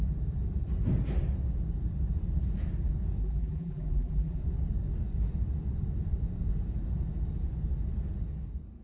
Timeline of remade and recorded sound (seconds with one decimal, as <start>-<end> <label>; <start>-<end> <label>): 0.0-3.2 recorded; 3.2-4.4 remade; 4.4-8.8 recorded